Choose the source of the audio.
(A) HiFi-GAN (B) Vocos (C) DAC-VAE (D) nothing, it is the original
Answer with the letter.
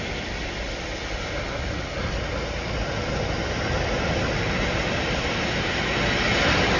D